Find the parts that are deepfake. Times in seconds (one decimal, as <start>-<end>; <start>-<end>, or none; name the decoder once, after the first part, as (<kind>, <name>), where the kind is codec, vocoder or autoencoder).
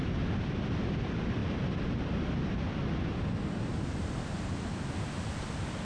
none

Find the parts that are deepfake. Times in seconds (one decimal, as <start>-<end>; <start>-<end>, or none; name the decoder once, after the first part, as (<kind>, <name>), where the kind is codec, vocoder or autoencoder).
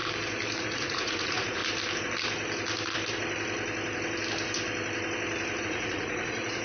0.6-1.6 (vocoder, Vocos); 5.6-6.6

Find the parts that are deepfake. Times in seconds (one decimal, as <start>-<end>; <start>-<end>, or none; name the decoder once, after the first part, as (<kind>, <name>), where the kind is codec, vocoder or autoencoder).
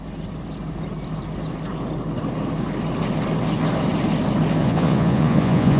4.6-5.8 (vocoder, Vocos)